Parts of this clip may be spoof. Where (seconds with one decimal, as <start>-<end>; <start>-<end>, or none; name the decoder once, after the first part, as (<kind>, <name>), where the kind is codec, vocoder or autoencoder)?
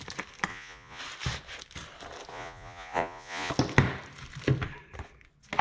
0.5-1.0 (vocoder, Vocos); 2.3-3.5